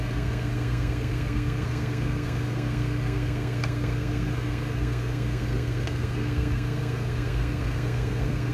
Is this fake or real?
fake